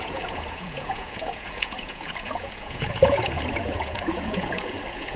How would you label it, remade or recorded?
remade